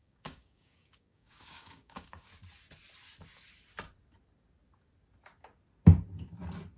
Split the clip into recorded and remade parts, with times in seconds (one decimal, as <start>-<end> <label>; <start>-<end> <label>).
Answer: 0.0-2.3 remade; 2.3-6.8 recorded